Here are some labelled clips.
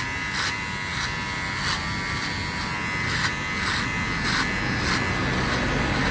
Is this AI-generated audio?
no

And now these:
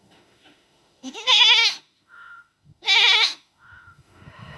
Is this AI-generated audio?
yes